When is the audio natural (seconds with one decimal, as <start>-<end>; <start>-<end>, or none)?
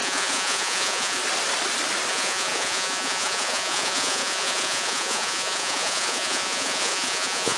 1.2-2.1